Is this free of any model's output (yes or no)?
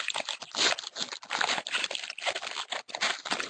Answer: yes